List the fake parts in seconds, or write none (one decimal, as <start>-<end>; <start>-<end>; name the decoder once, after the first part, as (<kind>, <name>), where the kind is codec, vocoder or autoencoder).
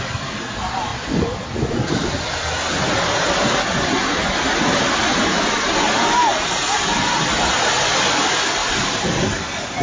none